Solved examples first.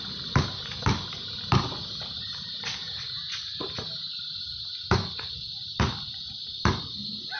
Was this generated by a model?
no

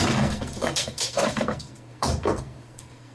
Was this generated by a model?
yes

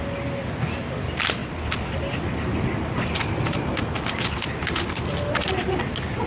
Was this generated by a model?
no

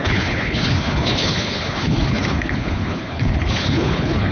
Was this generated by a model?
yes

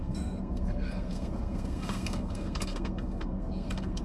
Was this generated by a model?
yes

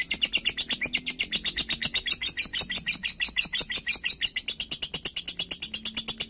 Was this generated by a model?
no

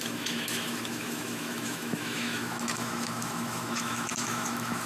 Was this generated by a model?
yes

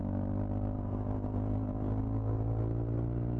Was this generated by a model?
no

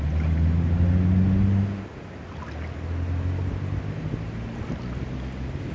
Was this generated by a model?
no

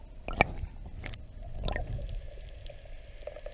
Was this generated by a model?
no